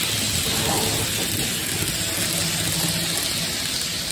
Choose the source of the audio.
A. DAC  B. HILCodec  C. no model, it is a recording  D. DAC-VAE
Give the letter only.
C